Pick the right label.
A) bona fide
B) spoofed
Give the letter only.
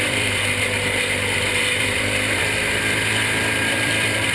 B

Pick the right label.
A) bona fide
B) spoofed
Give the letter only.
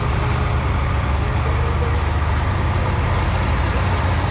A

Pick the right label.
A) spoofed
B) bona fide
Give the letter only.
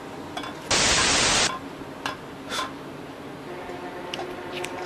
B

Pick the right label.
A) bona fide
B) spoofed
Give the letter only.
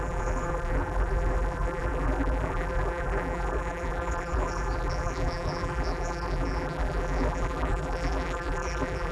B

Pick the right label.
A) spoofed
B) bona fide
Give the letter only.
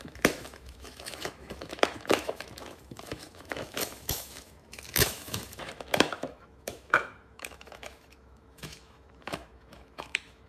A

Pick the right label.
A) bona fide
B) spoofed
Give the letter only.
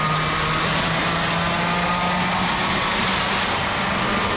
A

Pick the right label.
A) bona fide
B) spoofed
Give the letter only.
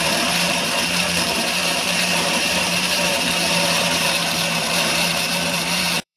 B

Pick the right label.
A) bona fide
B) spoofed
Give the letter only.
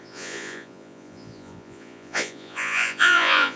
B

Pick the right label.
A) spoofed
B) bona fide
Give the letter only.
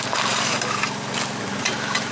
B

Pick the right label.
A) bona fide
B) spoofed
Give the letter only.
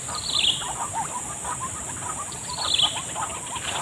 A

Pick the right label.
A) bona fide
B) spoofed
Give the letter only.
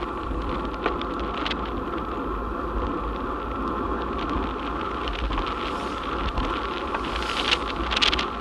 A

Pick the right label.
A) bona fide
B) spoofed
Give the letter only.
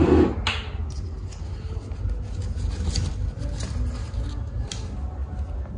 A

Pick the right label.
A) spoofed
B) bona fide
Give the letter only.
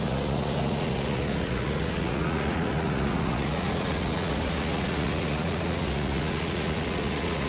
A